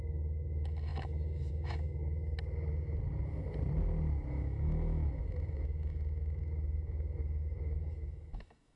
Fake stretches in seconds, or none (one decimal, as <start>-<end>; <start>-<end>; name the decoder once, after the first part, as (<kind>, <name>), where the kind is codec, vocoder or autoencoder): 0.0-2.0 (autoencoder, DAC-VAE); 4.3-8.8